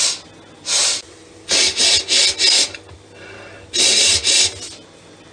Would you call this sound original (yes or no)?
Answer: yes